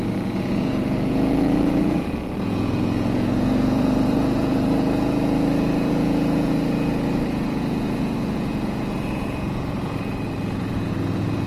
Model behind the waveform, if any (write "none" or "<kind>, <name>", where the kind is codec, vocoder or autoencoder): vocoder, Vocos